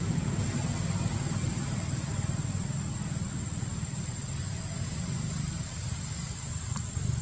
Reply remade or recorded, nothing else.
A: recorded